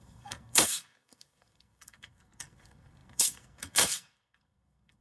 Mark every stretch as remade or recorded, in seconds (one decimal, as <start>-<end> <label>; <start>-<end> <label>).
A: 0.0-5.0 remade